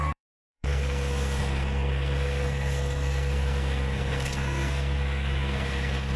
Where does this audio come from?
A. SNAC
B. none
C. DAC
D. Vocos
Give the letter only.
A